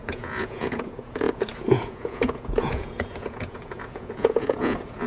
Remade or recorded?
remade